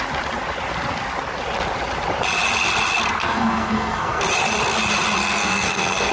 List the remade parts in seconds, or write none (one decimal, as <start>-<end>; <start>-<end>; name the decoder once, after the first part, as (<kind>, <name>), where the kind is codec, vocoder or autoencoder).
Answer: 3.2-4.2 (codec, SNAC); 5.2-6.1